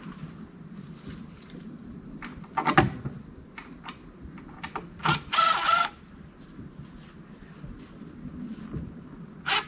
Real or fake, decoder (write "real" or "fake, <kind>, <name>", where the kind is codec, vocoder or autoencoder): real